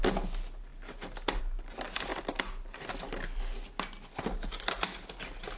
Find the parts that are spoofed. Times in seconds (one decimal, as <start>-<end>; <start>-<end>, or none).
none